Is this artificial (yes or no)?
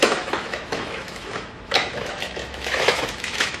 yes